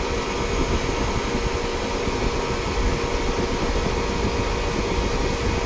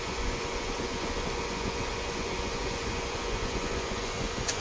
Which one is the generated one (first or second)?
second